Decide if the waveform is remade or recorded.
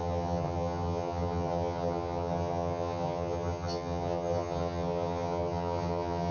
remade